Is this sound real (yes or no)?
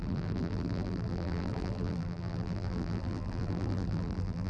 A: no